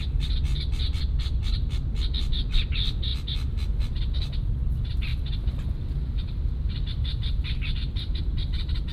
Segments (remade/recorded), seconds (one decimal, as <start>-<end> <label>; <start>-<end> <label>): 0.0-0.5 recorded; 0.5-1.0 remade; 1.0-8.9 recorded